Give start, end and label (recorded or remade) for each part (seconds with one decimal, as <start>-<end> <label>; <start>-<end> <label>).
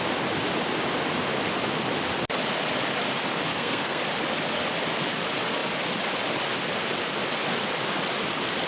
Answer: 0.0-3.5 recorded; 3.5-4.0 remade; 4.0-8.7 recorded